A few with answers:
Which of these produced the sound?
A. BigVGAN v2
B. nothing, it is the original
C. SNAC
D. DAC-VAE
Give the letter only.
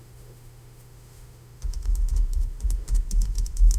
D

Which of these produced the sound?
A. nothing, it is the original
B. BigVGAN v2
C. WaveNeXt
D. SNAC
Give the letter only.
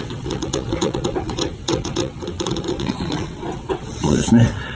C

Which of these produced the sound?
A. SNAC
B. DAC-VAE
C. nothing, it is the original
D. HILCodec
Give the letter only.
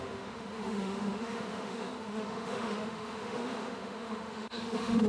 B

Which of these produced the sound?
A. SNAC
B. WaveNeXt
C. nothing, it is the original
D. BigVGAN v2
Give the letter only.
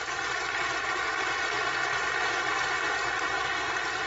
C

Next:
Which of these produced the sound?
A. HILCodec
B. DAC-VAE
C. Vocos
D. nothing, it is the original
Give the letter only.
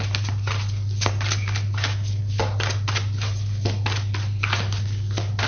D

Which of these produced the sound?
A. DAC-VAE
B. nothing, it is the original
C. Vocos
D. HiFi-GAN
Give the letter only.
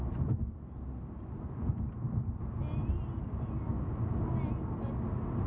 B